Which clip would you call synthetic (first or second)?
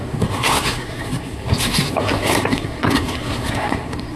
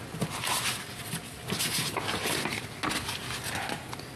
first